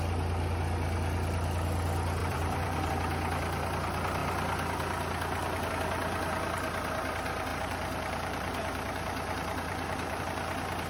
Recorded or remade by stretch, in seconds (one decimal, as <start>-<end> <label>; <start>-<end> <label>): 0.0-2.2 recorded; 2.2-2.9 remade; 2.9-7.5 recorded; 7.5-10.2 remade; 10.2-10.9 recorded